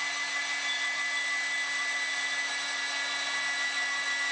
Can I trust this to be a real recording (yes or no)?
yes